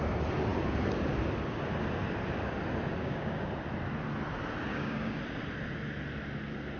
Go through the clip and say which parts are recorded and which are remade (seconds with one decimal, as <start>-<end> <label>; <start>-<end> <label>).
0.0-3.0 recorded; 3.0-3.5 remade; 3.5-4.7 recorded; 4.7-5.2 remade; 5.2-6.8 recorded